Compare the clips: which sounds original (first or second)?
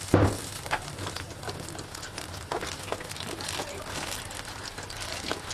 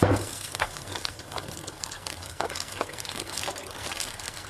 first